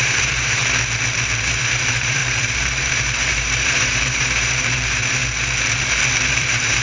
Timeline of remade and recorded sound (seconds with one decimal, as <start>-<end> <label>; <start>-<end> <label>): 0.0-0.6 remade; 0.6-1.5 recorded; 1.5-5.2 remade; 5.2-6.3 recorded; 6.3-6.8 remade